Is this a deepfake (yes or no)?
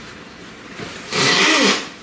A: no